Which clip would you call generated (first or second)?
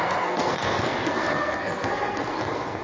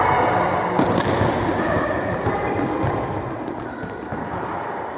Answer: first